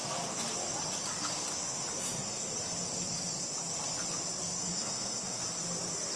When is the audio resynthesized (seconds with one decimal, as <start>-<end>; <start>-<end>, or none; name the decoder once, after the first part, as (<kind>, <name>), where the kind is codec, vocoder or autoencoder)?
1.9-2.5 (codec, SNAC); 4.6-5.4